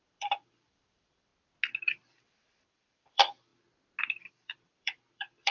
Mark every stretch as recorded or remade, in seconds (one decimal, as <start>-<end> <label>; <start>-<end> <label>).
0.0-1.3 remade; 1.3-1.8 recorded; 1.8-3.5 remade; 3.5-4.3 recorded; 4.3-5.5 remade

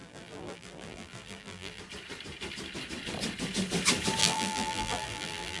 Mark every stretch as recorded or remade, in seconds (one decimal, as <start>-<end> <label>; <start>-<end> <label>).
0.0-1.8 remade; 1.8-4.2 recorded; 4.2-5.6 remade

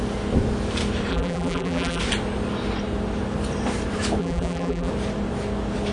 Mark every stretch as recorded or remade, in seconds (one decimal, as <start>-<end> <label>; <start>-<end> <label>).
0.0-1.1 recorded; 1.1-2.0 remade; 2.0-4.2 recorded; 4.2-4.9 remade; 4.9-5.9 recorded

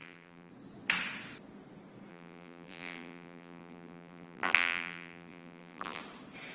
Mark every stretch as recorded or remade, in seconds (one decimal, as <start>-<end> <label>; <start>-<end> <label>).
0.0-0.5 remade; 0.5-2.1 recorded; 2.1-6.0 remade; 6.0-6.5 recorded

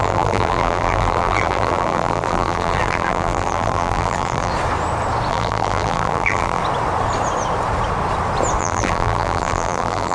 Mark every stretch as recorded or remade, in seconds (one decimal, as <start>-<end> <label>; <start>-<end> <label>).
0.0-4.5 remade; 4.5-5.3 recorded; 5.3-6.6 remade; 6.6-8.6 recorded; 8.6-10.1 remade

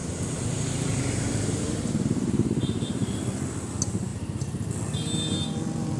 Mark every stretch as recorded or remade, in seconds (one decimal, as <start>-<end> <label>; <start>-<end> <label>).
0.0-3.2 remade; 3.2-4.1 recorded; 4.1-4.7 remade; 4.7-6.0 recorded

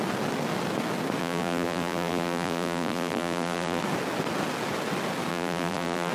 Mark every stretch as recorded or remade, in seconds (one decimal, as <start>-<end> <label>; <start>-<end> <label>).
0.0-1.2 recorded; 1.2-3.8 remade; 3.8-5.3 recorded; 5.3-6.1 remade

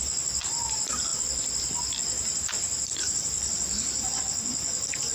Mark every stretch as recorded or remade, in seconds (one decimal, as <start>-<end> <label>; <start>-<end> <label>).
0.0-1.1 recorded; 1.1-4.2 remade; 4.2-5.1 recorded